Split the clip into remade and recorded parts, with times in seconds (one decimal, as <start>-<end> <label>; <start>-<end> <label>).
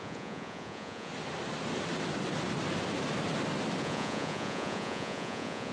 0.0-1.1 remade; 1.1-3.8 recorded; 3.8-5.7 remade